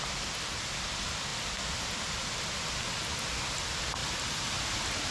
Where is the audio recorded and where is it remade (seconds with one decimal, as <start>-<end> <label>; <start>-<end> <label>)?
0.0-5.1 recorded